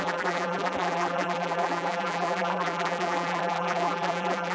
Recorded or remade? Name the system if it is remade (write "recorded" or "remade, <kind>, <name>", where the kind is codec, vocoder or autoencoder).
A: remade, vocoder, BigVGAN v2